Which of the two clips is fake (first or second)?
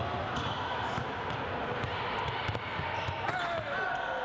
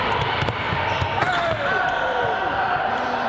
second